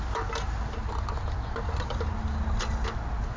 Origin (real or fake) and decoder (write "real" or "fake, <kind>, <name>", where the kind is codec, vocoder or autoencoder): real